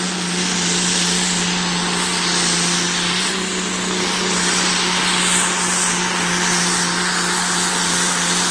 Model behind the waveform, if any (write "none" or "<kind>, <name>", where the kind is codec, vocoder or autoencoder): none